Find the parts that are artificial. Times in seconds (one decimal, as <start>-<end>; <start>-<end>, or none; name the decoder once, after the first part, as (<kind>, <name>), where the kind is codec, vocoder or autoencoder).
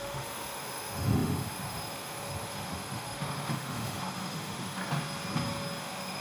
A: 0.0-4.8 (autoencoder, DAC-VAE); 5.8-6.2